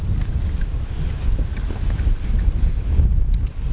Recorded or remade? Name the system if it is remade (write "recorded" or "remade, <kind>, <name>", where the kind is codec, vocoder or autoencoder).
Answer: recorded